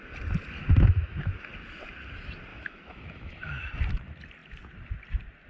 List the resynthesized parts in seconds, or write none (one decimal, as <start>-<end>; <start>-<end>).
0.6-1.5; 2.5-3.7